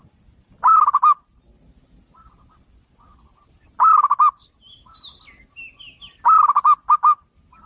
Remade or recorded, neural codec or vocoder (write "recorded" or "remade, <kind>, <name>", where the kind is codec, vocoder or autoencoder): recorded